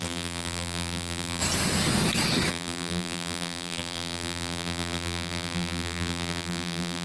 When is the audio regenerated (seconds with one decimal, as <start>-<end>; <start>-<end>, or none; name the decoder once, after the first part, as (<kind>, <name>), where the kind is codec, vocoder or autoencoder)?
0.0-1.4 (vocoder, BigVGAN v2); 2.5-7.0